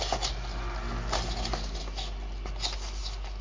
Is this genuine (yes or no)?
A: yes